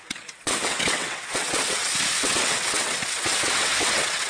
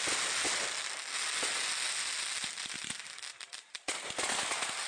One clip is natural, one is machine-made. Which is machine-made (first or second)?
first